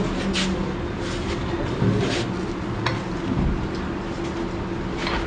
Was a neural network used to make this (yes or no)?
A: no